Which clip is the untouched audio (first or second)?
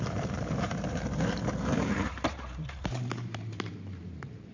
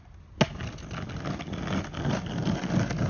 second